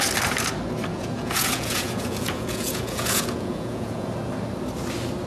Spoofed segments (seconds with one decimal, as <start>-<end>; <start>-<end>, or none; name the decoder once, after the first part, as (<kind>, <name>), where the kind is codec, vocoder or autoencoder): 0.9-4.1 (vocoder, Vocos)